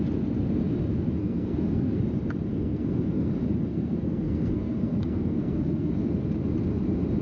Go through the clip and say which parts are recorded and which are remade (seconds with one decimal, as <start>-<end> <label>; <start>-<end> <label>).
0.0-1.2 recorded; 1.2-2.0 remade; 2.0-2.5 recorded; 2.5-3.3 remade; 3.3-3.7 recorded; 3.7-5.9 remade; 5.9-7.2 recorded